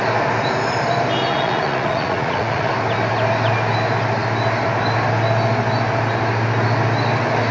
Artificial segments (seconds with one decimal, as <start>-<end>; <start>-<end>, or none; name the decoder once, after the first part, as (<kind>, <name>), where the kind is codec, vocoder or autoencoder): 1.3-2.7 (vocoder, Vocos)